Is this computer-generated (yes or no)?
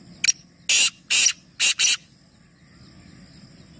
no